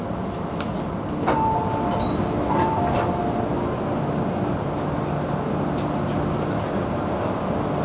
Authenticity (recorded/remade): recorded